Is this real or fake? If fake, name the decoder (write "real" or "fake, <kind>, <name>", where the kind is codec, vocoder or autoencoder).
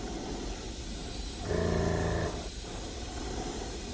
real